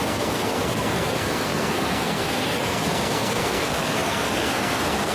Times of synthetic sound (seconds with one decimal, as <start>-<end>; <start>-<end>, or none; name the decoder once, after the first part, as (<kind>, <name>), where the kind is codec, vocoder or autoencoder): 0.0-5.1 (codec, SNAC)